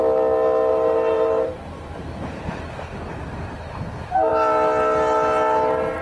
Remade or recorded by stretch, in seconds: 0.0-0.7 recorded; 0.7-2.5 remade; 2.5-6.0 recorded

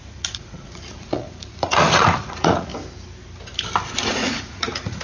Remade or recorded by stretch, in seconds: 0.0-2.7 remade; 2.7-4.1 recorded; 4.1-5.0 remade

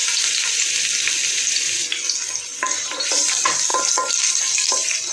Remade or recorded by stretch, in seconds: 0.0-5.1 recorded

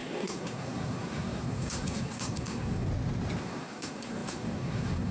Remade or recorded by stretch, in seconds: 0.0-2.9 remade; 2.9-3.4 recorded; 3.4-5.1 remade

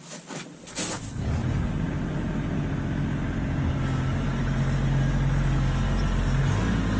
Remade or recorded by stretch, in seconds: 0.0-1.4 recorded; 1.4-2.3 remade; 2.3-7.0 recorded

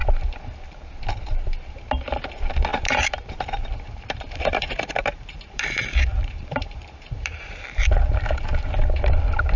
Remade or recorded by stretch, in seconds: 0.0-2.7 recorded; 2.7-7.6 remade; 7.6-9.6 recorded

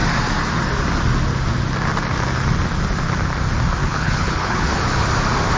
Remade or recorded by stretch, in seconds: 0.0-3.8 recorded; 3.8-4.7 remade; 4.7-5.6 recorded